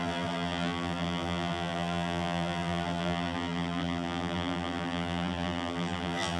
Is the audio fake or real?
fake